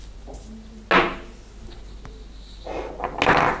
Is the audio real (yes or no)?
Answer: yes